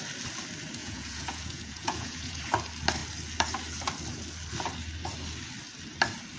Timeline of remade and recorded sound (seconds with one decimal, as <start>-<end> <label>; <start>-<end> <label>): 0.0-0.8 recorded; 0.8-2.4 remade; 2.4-6.4 recorded